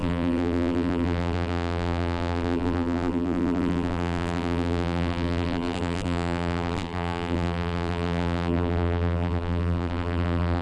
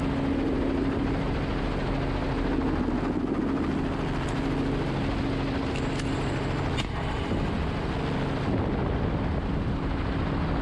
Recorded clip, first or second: second